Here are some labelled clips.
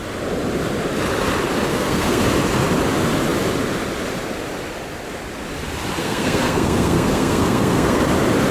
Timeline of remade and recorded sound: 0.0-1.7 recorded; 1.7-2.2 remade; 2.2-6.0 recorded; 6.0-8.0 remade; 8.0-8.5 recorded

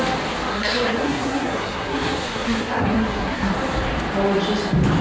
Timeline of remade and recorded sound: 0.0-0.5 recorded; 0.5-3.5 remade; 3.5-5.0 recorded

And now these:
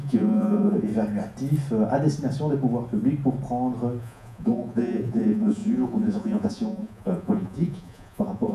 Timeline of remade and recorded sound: 0.0-0.9 remade; 0.9-4.0 recorded; 4.0-8.5 remade

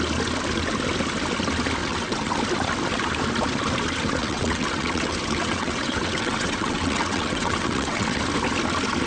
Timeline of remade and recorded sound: 0.0-1.8 recorded; 1.8-2.4 remade; 2.4-4.2 recorded; 4.2-8.2 remade; 8.2-9.1 recorded